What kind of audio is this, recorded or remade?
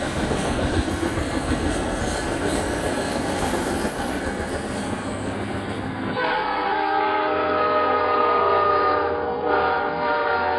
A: remade